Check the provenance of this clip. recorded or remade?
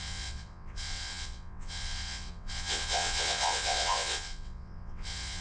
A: remade